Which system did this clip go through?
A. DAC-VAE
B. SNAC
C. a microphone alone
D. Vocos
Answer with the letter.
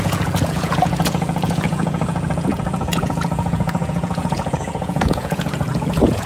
D